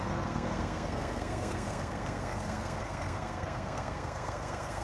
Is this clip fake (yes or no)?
yes